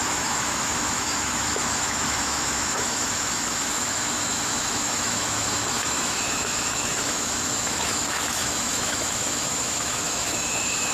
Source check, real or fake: fake